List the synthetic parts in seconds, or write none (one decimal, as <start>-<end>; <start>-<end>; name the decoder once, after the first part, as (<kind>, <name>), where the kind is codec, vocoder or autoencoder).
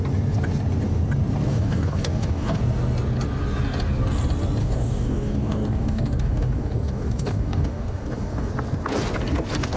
1.5-2.6 (codec, DAC); 4.6-8.5